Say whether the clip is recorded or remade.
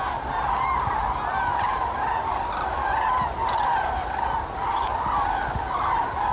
recorded